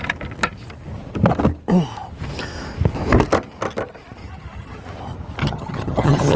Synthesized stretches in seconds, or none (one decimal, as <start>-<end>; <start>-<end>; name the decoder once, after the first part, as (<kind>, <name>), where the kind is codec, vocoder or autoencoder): 4.2-4.8 (vocoder, HiFi-GAN); 5.4-6.4